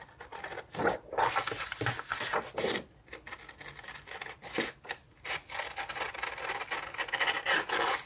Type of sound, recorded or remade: recorded